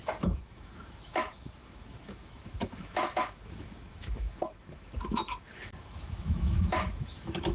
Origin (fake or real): fake